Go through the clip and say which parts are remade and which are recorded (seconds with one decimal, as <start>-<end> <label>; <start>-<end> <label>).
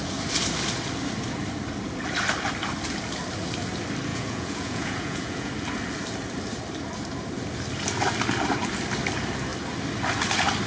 0.0-4.1 recorded; 4.1-5.5 remade; 5.5-10.7 recorded